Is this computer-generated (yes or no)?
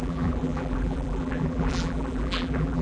yes